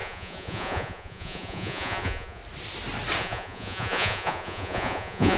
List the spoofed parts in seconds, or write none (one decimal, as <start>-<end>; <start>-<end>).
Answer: 0.0-2.4; 3.2-5.4